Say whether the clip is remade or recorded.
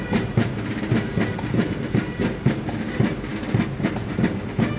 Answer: recorded